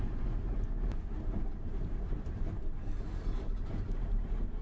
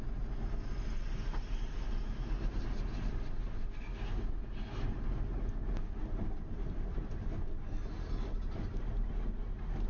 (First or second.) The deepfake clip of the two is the first